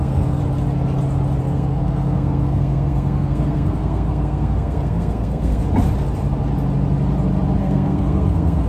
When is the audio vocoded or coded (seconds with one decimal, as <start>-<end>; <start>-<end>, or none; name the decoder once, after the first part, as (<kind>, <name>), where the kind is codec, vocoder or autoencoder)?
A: 0.0-0.4 (codec, SNAC); 1.4-5.6; 7.6-8.7